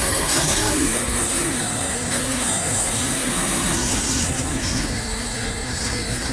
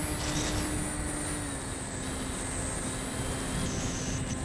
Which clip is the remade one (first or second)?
first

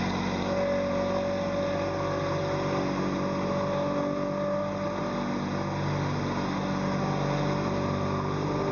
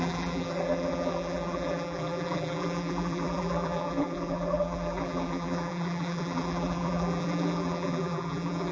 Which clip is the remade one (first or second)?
second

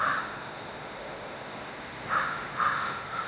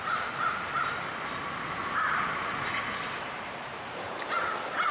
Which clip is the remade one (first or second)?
first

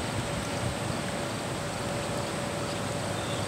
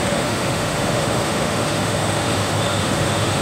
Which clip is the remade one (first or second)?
second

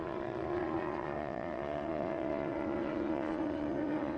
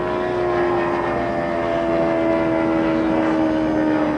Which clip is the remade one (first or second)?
first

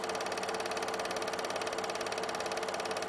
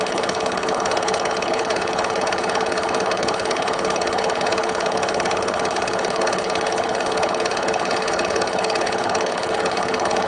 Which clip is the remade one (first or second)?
second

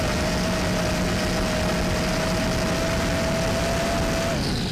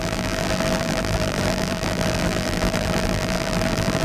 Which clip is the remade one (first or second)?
second